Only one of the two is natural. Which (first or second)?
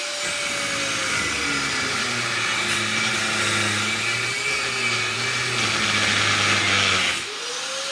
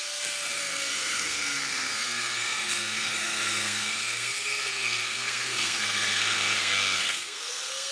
first